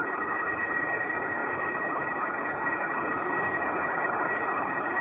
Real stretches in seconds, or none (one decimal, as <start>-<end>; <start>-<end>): none